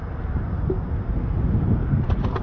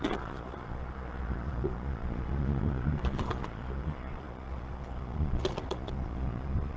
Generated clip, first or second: second